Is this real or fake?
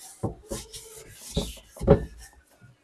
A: real